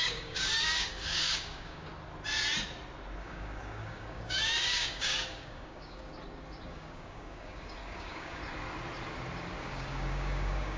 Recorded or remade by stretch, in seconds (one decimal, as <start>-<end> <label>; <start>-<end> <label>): 0.0-1.9 remade; 1.9-3.2 recorded; 3.2-6.1 remade; 6.1-6.7 recorded; 6.7-8.4 remade; 8.4-9.6 recorded; 9.6-10.8 remade